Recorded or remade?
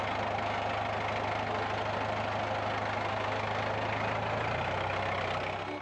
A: recorded